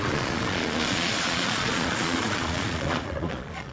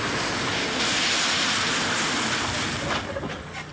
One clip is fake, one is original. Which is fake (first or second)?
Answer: first